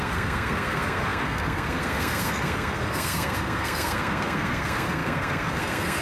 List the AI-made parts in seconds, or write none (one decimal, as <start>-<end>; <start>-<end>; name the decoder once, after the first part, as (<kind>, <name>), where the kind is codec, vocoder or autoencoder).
0.0-6.0 (codec, SNAC)